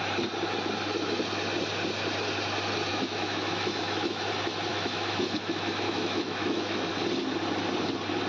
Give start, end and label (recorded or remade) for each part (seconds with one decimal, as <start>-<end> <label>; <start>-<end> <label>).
0.0-2.9 recorded; 2.9-4.3 remade; 4.3-4.7 recorded; 4.7-6.9 remade; 6.9-8.3 recorded